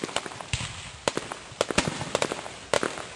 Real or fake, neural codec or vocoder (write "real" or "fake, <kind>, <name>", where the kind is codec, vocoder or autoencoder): real